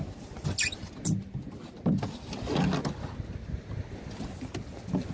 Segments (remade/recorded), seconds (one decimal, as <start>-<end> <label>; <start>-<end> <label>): 0.0-5.1 recorded